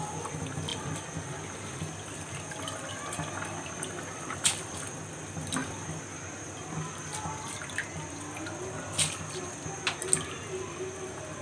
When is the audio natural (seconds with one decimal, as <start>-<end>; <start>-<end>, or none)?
0.0-11.4